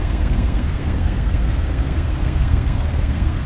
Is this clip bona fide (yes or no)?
no